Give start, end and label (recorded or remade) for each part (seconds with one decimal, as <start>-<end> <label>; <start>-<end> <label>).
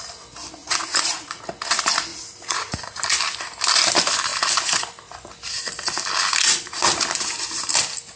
0.0-0.6 recorded; 0.6-1.4 remade; 1.4-2.1 recorded; 2.1-3.0 remade; 3.0-8.2 recorded